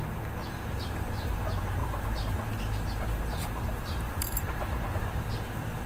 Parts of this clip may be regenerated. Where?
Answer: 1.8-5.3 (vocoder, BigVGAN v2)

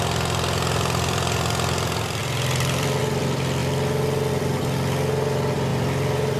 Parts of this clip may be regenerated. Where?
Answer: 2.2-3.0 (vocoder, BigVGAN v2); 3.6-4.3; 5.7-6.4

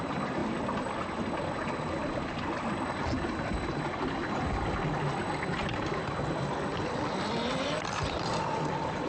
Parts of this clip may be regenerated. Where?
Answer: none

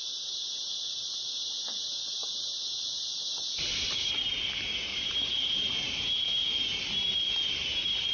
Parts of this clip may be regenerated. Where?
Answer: 3.5-4.2 (vocoder, BigVGAN v2); 4.9-7.5

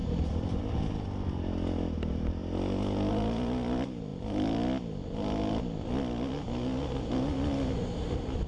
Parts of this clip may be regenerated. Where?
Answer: 0.0-0.6 (vocoder, BigVGAN v2)